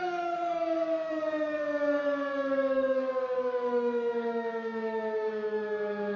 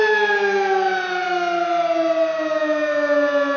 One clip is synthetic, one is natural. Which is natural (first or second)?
second